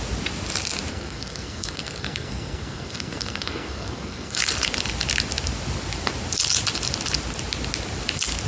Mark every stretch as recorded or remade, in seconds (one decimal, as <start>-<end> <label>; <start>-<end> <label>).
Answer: 0.0-0.9 recorded; 0.9-4.4 remade; 4.4-8.5 recorded